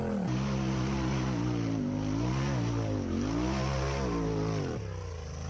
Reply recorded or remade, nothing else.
recorded